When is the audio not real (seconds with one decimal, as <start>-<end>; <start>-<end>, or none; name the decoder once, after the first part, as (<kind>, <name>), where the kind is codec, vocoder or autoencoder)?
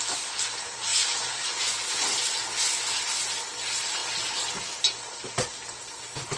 0.9-1.9 (vocoder, Vocos)